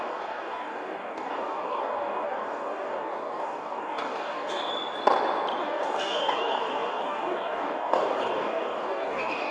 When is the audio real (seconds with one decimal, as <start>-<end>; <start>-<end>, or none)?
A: 4.7-5.6